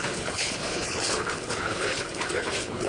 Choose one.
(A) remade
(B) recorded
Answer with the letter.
A